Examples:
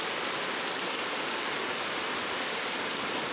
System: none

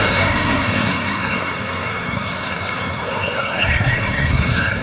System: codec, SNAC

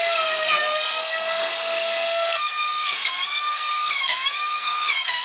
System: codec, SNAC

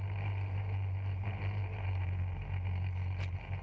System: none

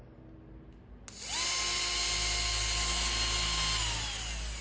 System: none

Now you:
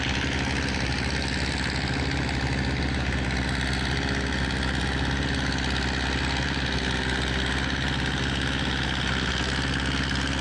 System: none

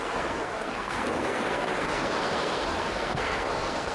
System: codec, SNAC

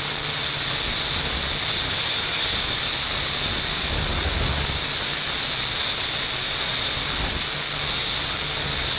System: none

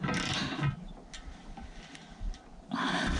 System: none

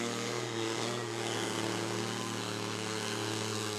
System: codec, SNAC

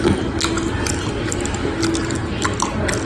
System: none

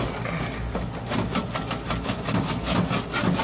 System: none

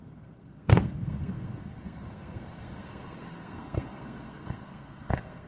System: codec, SNAC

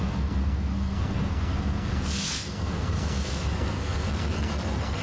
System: codec, SNAC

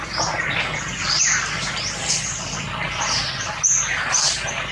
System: none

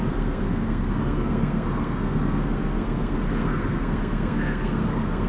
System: codec, SNAC